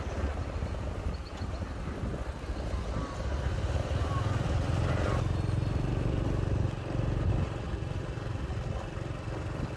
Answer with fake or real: real